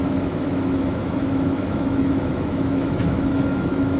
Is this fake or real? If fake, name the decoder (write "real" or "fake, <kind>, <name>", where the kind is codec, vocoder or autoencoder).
fake, autoencoder, DAC-VAE